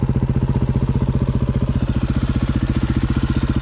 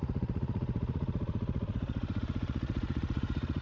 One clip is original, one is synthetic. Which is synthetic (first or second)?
second